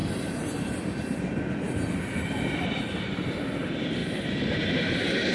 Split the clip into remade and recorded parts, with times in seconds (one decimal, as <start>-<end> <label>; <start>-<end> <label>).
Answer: 0.0-4.0 recorded; 4.0-4.6 remade; 4.6-5.3 recorded